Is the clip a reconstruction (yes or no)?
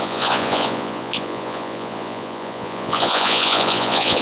yes